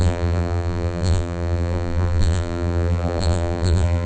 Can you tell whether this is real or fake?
fake